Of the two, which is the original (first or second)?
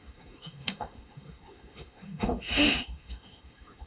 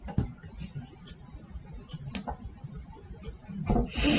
second